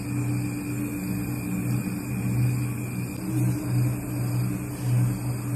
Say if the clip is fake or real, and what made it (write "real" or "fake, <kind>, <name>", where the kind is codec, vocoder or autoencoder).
real